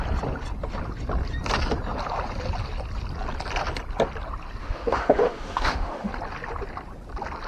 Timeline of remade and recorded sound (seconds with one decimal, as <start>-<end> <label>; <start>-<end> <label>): 0.0-4.6 recorded; 4.6-6.1 remade; 6.1-7.5 recorded